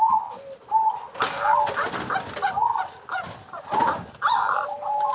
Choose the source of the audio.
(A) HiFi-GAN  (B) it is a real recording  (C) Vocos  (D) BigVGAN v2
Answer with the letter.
B